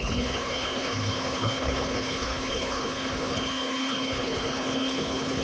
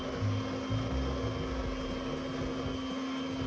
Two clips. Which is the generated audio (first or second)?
first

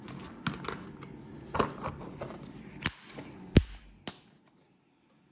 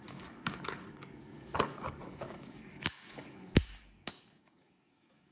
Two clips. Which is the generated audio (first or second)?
second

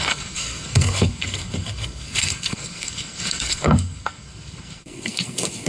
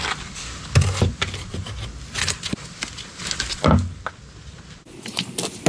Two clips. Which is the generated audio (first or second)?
first